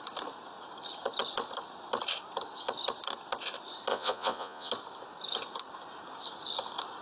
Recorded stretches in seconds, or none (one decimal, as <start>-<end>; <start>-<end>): 0.0-3.9; 4.7-7.0